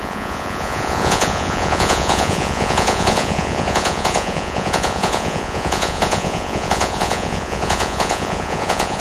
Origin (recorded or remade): remade